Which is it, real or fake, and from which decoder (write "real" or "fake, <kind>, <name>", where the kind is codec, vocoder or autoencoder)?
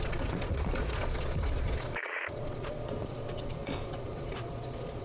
fake, vocoder, Vocos